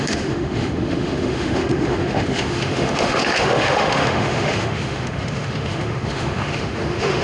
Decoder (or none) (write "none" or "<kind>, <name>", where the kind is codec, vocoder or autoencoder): autoencoder, DAC-VAE